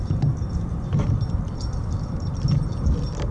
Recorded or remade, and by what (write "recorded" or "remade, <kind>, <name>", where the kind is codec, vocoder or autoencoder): recorded